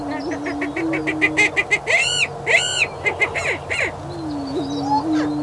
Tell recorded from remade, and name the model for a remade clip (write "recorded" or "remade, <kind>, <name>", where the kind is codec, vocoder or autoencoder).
recorded